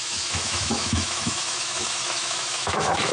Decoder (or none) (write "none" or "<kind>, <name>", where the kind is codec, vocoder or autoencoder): autoencoder, DAC-VAE